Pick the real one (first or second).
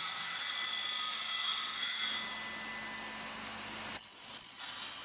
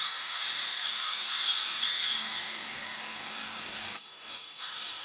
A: first